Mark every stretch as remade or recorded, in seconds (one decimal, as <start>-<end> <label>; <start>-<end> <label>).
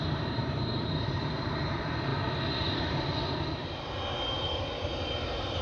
0.0-2.1 remade; 2.1-2.7 recorded; 2.7-3.6 remade; 3.6-5.1 recorded; 5.1-5.6 remade